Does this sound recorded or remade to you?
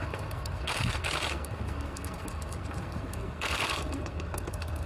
remade